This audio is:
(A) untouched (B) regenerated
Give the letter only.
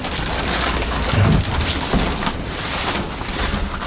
A